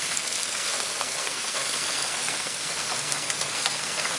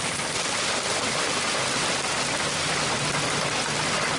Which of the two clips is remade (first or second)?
first